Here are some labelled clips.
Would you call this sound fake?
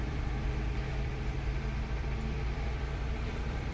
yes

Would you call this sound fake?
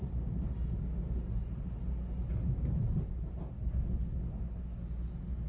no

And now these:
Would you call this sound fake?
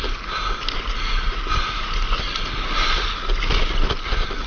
no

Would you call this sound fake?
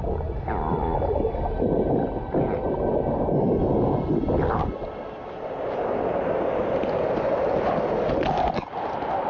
no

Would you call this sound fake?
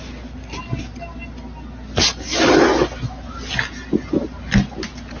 no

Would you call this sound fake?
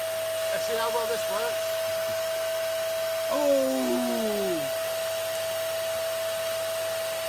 no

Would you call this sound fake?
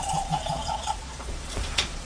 yes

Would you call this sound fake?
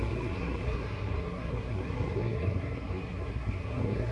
yes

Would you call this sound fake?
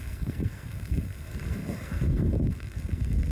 yes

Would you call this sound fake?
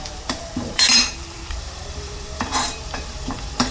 yes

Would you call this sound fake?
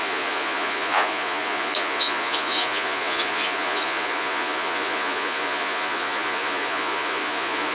yes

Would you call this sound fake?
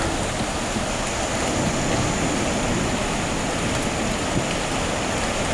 no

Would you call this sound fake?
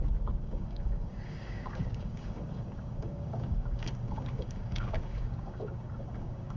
yes